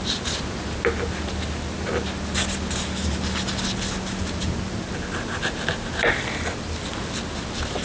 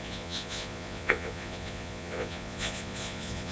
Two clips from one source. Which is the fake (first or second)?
second